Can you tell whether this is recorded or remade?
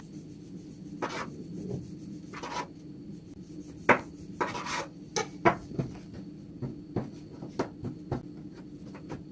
recorded